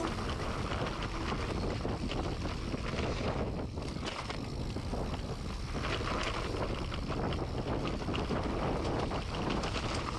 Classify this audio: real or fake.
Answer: real